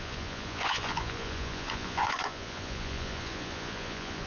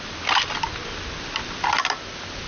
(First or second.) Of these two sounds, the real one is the second